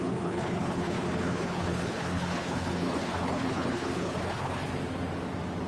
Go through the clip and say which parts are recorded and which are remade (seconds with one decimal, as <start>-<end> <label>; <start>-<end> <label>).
0.0-4.7 remade; 4.7-5.7 recorded